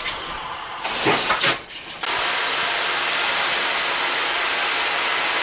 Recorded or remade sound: recorded